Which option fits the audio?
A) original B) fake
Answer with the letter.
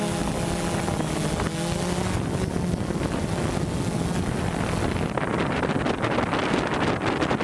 A